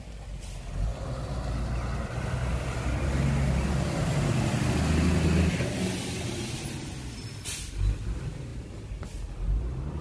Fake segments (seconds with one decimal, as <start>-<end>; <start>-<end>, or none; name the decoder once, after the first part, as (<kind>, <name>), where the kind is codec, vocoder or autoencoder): none